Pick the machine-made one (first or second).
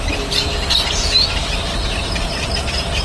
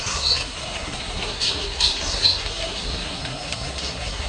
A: second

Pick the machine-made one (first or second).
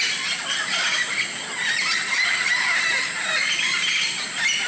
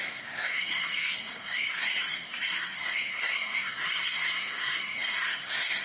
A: second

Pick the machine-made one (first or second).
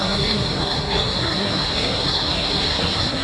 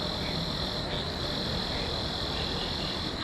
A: first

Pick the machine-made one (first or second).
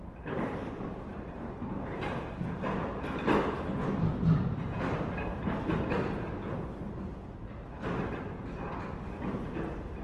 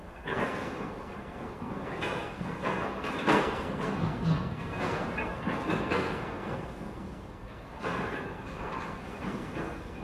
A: second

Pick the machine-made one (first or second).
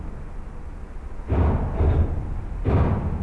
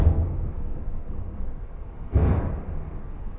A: second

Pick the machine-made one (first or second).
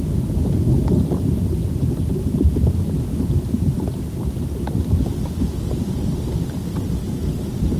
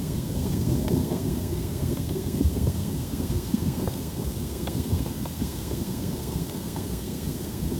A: second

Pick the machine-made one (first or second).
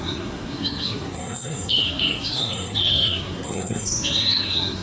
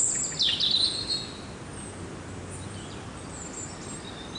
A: first